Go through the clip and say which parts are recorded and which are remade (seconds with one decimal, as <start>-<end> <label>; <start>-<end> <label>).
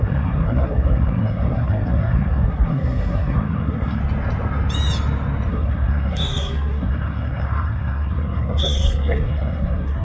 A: 0.0-4.0 remade; 4.0-5.5 recorded; 5.5-10.0 remade